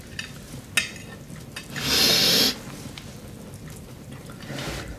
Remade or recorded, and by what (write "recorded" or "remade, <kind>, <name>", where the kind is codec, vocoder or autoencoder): recorded